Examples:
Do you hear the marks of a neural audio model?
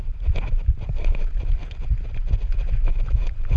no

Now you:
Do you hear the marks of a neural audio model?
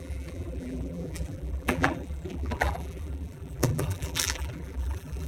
yes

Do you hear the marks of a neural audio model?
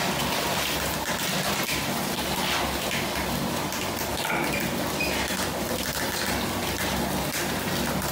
no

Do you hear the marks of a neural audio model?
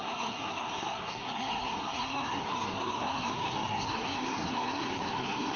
yes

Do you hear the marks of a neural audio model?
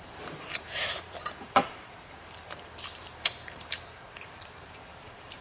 yes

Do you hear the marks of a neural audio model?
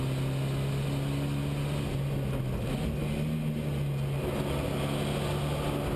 no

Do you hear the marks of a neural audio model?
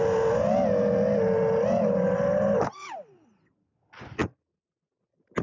no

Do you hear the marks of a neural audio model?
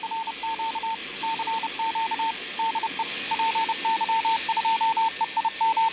no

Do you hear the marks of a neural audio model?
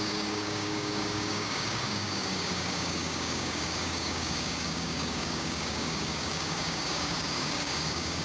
yes